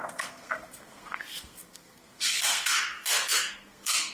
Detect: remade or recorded remade